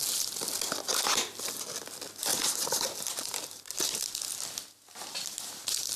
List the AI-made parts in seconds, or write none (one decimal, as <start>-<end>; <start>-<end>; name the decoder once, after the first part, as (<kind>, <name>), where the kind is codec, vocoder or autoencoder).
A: none